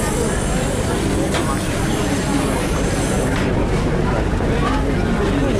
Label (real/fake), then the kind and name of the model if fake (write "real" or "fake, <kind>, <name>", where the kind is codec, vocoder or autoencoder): real